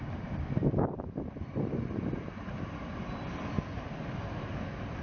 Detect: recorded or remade recorded